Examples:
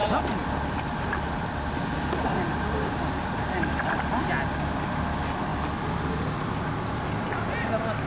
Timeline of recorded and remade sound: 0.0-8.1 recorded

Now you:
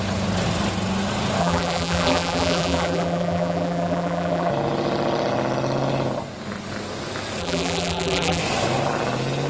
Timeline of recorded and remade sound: 0.0-1.4 recorded; 1.4-4.5 remade; 4.5-7.4 recorded; 7.4-8.4 remade; 8.4-9.5 recorded

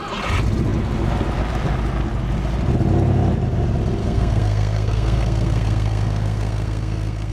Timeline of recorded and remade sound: 0.0-4.0 recorded; 4.0-7.3 remade

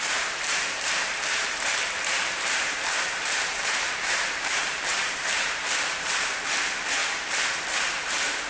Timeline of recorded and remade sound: 0.0-7.0 remade; 7.0-7.6 recorded; 7.6-8.5 remade

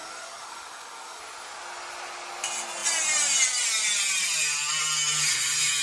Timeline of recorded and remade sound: 0.0-1.2 remade; 1.2-5.8 recorded

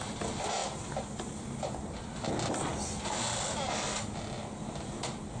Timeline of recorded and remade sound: 0.0-5.4 recorded